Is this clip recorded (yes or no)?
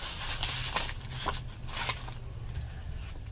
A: yes